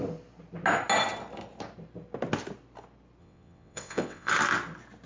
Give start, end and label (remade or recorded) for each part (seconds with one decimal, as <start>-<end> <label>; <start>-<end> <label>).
0.0-3.2 recorded; 3.2-4.3 remade; 4.3-5.1 recorded